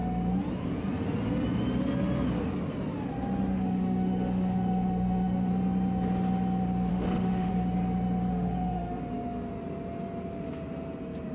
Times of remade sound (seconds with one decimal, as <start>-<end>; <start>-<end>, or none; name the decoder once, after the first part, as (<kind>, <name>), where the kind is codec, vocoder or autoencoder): 3.5-5.5 (autoencoder, DAC-VAE); 6.9-7.5; 8.3-9.0